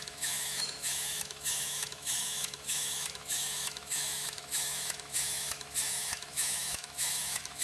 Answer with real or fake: fake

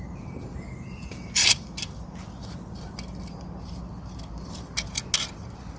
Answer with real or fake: real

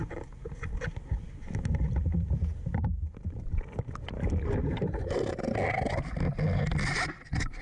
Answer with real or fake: real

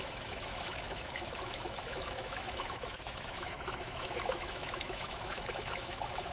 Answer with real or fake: fake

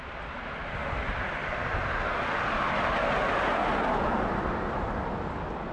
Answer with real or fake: real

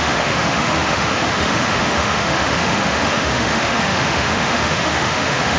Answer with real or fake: fake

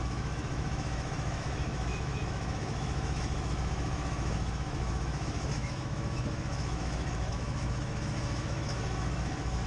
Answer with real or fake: fake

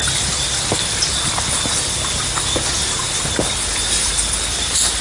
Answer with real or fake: real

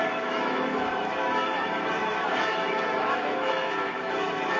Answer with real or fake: fake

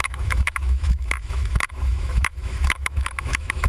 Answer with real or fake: fake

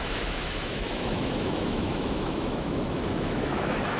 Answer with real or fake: fake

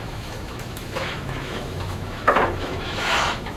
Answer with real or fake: fake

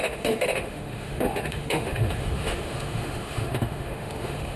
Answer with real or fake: fake